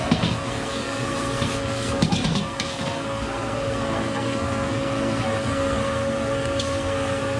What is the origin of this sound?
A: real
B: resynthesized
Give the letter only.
B